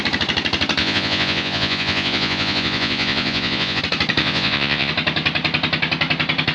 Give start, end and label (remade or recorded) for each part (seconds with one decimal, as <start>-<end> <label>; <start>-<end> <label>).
0.0-0.8 recorded; 0.8-3.8 remade; 3.8-4.2 recorded; 4.2-4.9 remade; 4.9-6.5 recorded